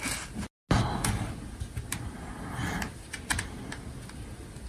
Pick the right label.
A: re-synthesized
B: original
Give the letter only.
B